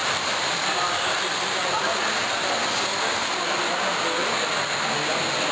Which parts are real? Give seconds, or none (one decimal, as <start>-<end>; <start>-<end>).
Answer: 0.0-5.5